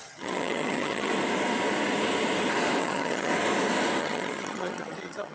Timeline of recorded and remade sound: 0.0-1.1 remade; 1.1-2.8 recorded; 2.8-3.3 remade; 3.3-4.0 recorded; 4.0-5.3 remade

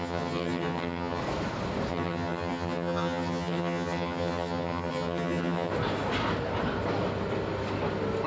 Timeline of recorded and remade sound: 0.0-1.2 remade; 1.2-1.9 recorded; 1.9-5.7 remade; 5.7-8.3 recorded

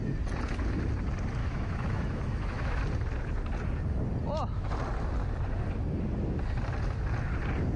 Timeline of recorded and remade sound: 0.0-1.4 recorded; 1.4-2.8 remade; 2.8-7.8 recorded

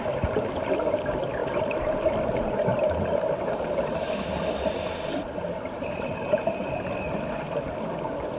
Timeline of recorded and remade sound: 0.0-2.7 recorded; 2.7-4.0 remade; 4.0-8.4 recorded

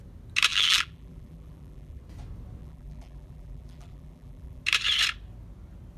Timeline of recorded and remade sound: 0.0-0.5 recorded; 0.5-2.0 remade; 2.0-2.6 recorded; 2.6-4.6 remade; 4.6-6.0 recorded

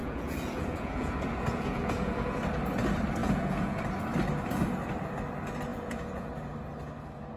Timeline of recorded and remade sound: 0.0-2.4 remade; 2.4-3.2 recorded; 3.2-3.8 remade; 3.8-5.7 recorded; 5.7-6.3 remade; 6.3-7.4 recorded

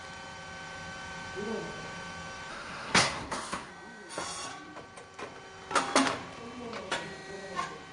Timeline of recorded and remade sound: 0.0-2.5 recorded; 2.5-3.7 remade; 3.7-7.9 recorded

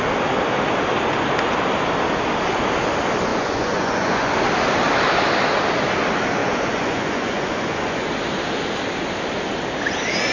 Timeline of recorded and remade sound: 0.0-3.3 recorded; 3.3-4.3 remade; 4.3-6.4 recorded; 6.4-8.1 remade; 8.1-10.3 recorded